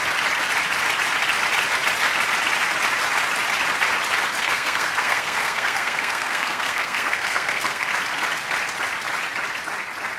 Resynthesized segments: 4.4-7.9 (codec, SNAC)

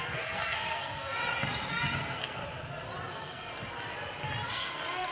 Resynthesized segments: 0.0-1.2 (codec, SNAC); 1.7-2.4; 3.1-3.5; 4.5-5.1

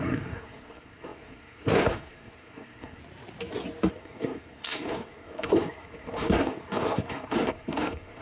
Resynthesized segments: 0.0-3.0 (codec, SNAC); 3.9-8.2

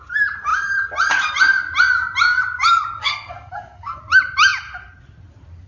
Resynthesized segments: 3.0-4.0 (codec, SNAC)

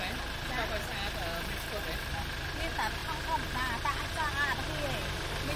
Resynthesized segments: none